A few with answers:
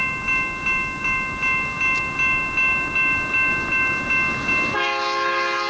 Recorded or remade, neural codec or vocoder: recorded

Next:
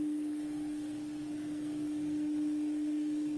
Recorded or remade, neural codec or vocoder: remade, codec, SNAC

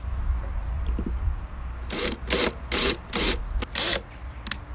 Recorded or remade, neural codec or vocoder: recorded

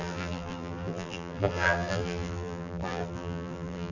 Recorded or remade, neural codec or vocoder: remade, vocoder, BigVGAN v2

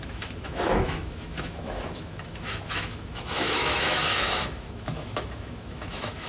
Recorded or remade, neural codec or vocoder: remade, autoencoder, DAC-VAE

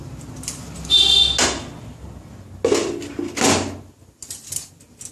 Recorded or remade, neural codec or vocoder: recorded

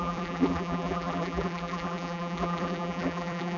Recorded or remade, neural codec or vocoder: remade, vocoder, BigVGAN v2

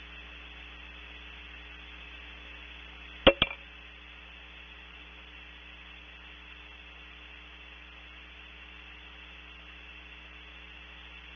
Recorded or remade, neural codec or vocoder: recorded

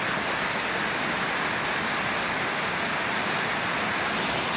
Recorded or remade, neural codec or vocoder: recorded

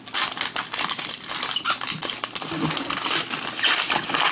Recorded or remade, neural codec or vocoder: recorded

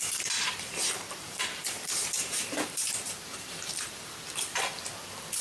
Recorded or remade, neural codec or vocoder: remade, vocoder, BigVGAN v2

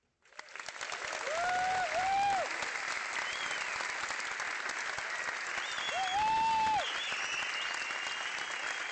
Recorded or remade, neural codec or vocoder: recorded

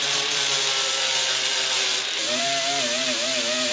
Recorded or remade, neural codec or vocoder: remade, vocoder, BigVGAN v2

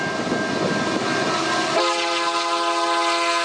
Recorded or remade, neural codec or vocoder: recorded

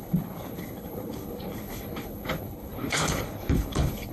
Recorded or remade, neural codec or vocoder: remade, codec, HILCodec